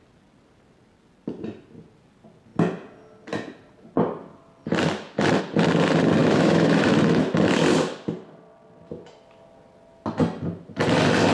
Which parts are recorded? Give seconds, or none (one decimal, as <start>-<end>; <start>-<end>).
0.0-6.2; 7.2-11.3